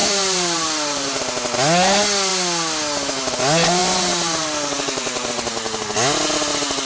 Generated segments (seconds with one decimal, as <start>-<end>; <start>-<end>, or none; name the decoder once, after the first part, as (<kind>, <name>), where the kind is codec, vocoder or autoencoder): 0.0-1.2 (vocoder, BigVGAN v2); 3.8-5.8